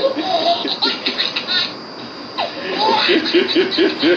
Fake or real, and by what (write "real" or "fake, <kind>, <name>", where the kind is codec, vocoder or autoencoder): real